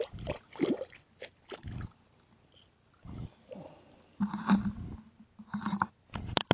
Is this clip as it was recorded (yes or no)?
yes